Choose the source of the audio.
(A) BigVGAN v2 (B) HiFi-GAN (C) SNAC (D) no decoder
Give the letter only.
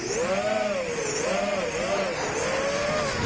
D